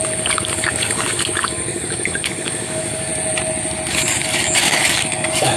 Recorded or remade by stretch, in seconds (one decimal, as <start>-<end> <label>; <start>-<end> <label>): 0.0-3.1 remade; 3.1-3.9 recorded; 3.9-5.6 remade